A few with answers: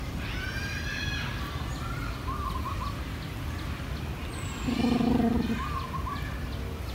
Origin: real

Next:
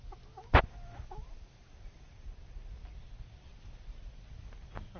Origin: real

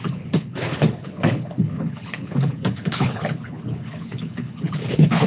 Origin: fake